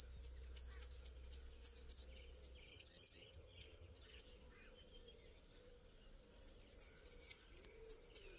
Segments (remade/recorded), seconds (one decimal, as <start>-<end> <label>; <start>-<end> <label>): 0.0-2.7 recorded; 2.7-4.2 remade; 4.2-8.4 recorded